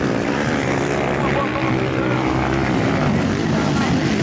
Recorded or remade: recorded